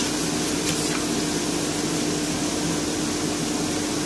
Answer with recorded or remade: recorded